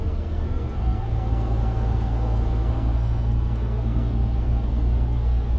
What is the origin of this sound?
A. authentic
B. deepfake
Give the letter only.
B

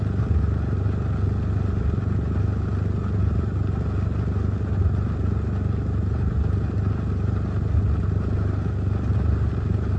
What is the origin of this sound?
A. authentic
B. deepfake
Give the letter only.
A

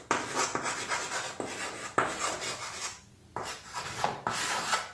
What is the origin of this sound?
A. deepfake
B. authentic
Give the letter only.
B